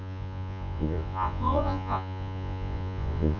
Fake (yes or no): yes